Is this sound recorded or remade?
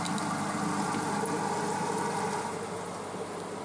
recorded